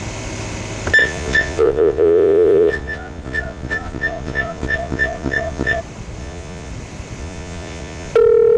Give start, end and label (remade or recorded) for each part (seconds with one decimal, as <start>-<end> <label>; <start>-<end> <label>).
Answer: 0.0-1.0 recorded; 1.0-5.8 remade; 5.8-6.2 recorded; 6.2-6.7 remade; 6.7-7.2 recorded; 7.2-8.1 remade; 8.1-8.6 recorded